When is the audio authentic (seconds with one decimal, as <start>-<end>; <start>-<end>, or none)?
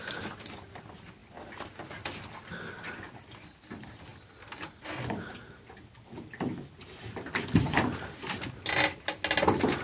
0.0-9.8